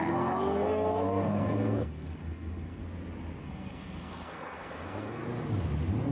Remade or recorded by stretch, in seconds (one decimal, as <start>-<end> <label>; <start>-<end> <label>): 0.0-2.8 remade; 2.8-3.4 recorded; 3.4-5.2 remade; 5.2-6.1 recorded